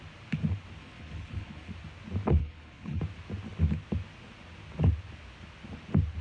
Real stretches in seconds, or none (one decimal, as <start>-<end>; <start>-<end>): 0.0-0.8; 1.7-2.4; 3.0-6.2